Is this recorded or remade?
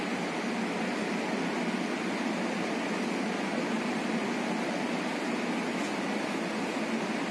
recorded